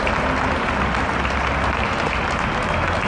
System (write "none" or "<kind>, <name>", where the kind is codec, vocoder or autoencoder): none